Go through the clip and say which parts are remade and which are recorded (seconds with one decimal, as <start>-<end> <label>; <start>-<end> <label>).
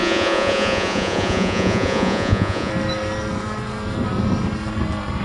0.0-2.7 remade; 2.7-5.2 recorded